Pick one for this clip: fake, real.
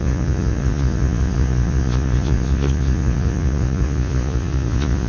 fake